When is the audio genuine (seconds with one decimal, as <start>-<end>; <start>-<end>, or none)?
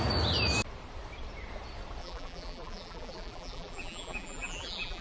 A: 0.0-2.0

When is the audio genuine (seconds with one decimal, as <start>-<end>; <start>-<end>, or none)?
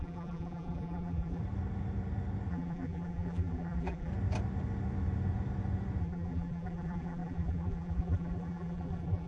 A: 1.4-2.5; 4.1-6.0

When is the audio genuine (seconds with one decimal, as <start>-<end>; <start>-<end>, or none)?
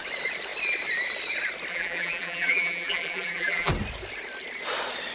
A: 0.0-1.7; 3.7-5.1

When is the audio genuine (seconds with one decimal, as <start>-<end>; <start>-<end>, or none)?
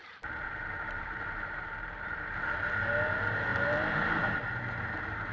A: 2.4-3.5; 4.3-5.3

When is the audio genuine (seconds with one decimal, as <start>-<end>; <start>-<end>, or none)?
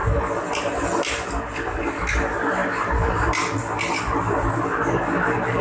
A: 0.0-5.6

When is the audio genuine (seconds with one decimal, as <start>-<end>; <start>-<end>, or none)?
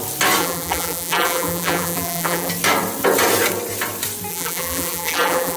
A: 0.0-0.4; 2.5-4.3